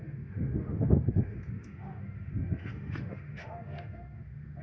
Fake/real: fake